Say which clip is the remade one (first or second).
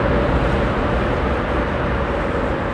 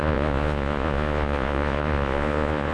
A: second